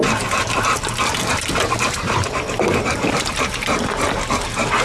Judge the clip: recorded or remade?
recorded